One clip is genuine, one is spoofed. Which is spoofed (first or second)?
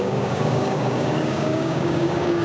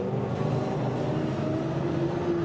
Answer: first